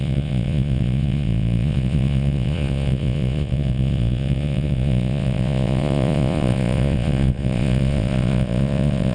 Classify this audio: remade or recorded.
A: remade